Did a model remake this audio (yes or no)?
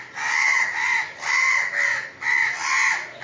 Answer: no